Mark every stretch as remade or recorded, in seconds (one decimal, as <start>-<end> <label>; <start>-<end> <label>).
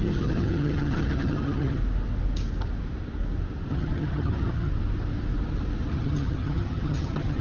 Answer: 0.0-1.8 remade; 1.8-3.7 recorded; 3.7-4.7 remade; 4.7-5.9 recorded; 5.9-7.4 remade